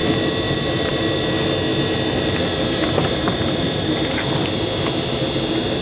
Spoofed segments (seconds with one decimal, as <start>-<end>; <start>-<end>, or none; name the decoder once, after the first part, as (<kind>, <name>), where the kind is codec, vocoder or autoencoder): 0.0-1.0 (vocoder, BigVGAN v2); 3.2-4.2